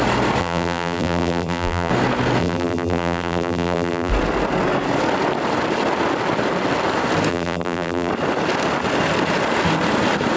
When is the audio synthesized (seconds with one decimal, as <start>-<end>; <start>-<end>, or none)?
0.4-1.9; 2.4-4.1; 7.3-8.1